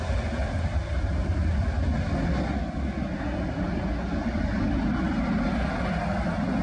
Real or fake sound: real